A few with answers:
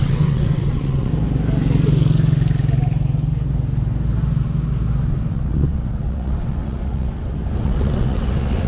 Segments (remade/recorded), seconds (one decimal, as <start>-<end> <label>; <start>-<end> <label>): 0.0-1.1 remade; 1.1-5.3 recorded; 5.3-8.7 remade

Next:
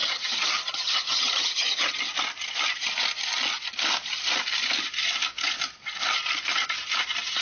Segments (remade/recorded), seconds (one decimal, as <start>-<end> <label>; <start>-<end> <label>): 0.0-1.9 remade; 1.9-7.4 recorded

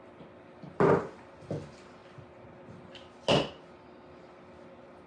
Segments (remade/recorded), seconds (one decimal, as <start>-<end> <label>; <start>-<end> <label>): 0.0-5.1 recorded